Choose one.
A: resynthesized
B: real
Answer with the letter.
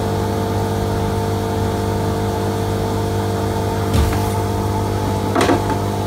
B